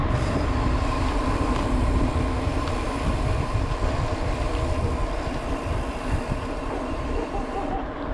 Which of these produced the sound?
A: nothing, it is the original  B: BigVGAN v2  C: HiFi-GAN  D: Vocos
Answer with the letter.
B